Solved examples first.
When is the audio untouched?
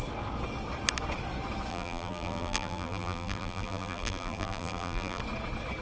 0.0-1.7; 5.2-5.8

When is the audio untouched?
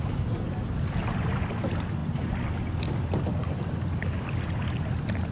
0.0-5.3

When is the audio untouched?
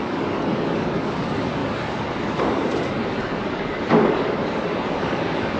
none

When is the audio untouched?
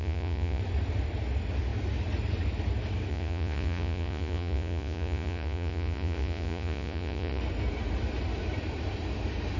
0.6-3.1; 7.4-9.6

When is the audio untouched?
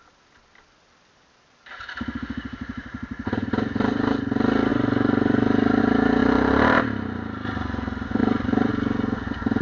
0.0-1.7; 4.2-4.7; 5.8-6.2; 6.8-8.2; 8.7-9.6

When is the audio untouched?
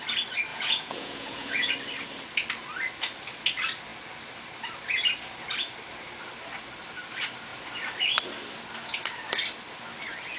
0.0-0.5; 1.7-10.4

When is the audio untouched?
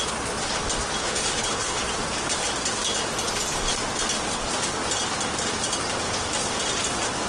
0.0-1.0; 1.8-7.3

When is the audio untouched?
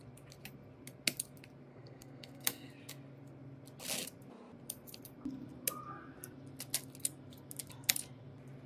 0.0-1.7; 2.7-8.7